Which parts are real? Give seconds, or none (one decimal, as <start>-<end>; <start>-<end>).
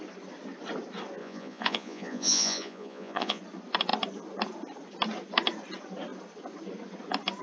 0.0-1.2; 3.4-7.4